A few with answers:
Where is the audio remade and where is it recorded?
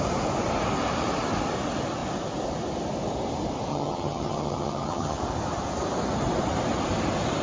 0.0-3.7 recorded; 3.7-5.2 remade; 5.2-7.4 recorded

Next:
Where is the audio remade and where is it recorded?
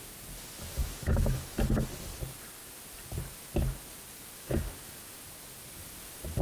0.0-0.8 recorded; 0.8-1.5 remade; 1.5-4.4 recorded; 4.4-5.2 remade; 5.2-6.4 recorded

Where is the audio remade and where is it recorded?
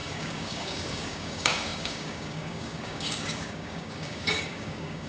0.0-5.1 remade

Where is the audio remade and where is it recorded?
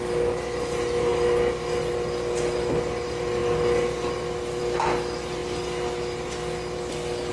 0.0-7.3 recorded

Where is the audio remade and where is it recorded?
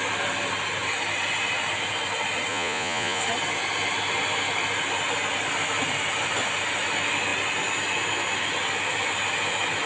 0.0-2.5 recorded; 2.5-3.2 remade; 3.2-9.9 recorded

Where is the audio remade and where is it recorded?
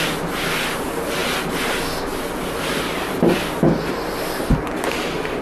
0.0-5.4 recorded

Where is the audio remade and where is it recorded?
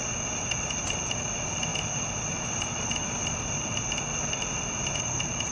0.0-5.5 recorded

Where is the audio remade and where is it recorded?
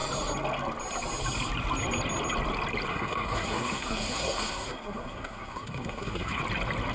0.0-2.9 recorded; 2.9-6.4 remade; 6.4-6.9 recorded